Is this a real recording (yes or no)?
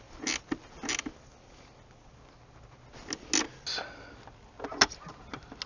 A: yes